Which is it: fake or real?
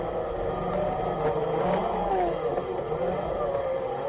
real